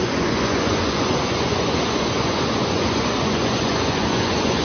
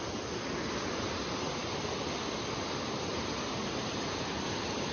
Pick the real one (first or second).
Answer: second